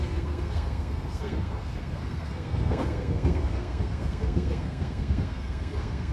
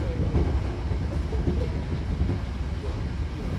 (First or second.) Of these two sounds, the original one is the second